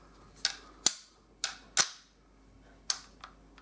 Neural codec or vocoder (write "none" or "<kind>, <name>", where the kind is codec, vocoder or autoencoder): none